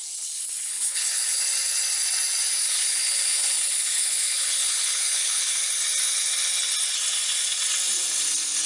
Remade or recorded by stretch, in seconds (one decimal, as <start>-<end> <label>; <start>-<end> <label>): 0.0-1.4 remade; 1.4-2.6 recorded; 2.6-5.7 remade; 5.7-8.7 recorded